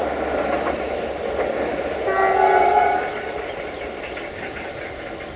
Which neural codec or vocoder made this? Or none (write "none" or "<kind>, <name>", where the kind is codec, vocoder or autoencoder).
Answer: none